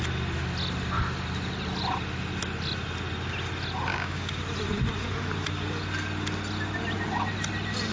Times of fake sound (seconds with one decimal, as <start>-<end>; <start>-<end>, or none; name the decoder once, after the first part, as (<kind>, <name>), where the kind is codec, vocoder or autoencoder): 3.9-4.4 (codec, DAC)